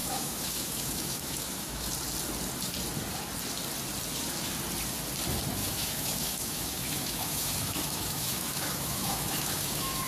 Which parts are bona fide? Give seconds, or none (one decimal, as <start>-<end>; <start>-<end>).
1.9-5.6